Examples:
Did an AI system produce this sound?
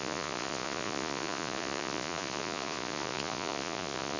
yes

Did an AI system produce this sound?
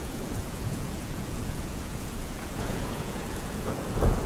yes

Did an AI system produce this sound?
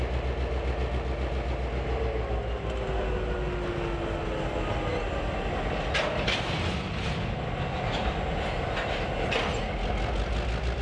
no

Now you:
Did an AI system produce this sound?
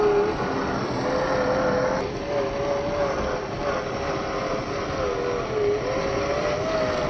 no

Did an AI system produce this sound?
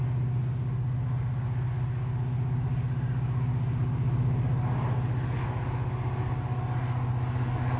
no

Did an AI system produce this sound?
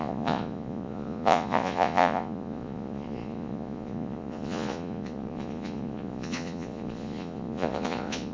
yes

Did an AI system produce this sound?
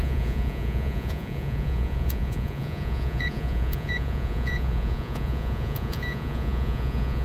yes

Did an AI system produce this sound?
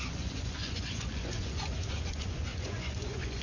yes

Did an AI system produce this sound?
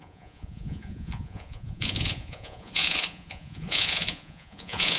yes